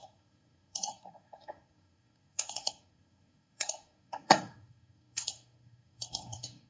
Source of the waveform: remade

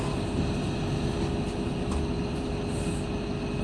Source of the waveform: recorded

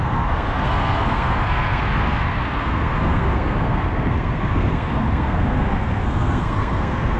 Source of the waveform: remade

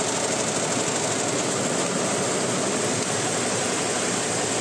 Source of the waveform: recorded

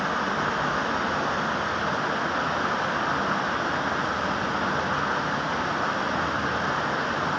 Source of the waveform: recorded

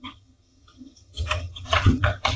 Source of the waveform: remade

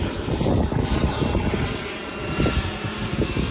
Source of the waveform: recorded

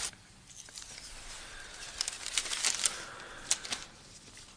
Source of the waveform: recorded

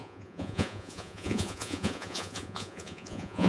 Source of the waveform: remade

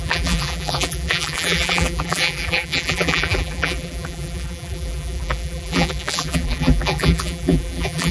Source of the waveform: remade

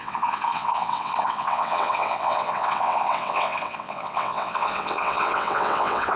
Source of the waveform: remade